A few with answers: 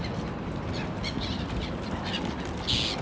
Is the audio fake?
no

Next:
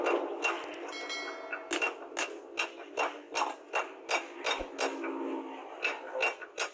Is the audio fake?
no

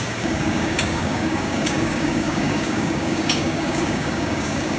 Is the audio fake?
yes